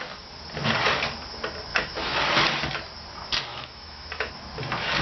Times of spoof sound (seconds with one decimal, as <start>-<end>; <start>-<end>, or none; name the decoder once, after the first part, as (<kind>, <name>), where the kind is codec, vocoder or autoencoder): 1.7-2.2 (autoencoder, DAC-VAE); 3.5-4.3